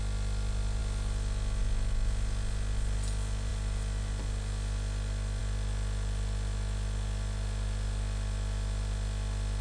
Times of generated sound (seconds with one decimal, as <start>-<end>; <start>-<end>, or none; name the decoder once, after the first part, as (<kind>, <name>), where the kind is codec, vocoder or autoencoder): none